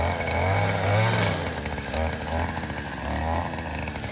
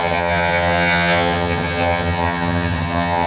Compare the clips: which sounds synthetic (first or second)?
second